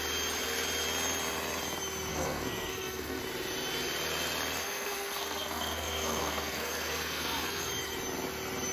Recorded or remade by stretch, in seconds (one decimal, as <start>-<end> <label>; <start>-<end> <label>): 0.0-2.1 recorded; 2.1-3.2 remade; 3.2-4.6 recorded; 4.6-7.7 remade; 7.7-8.7 recorded